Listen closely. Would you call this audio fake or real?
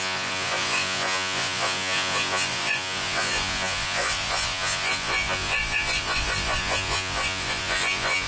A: fake